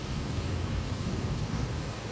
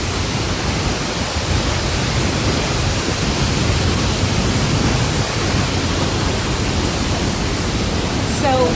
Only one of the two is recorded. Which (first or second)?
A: second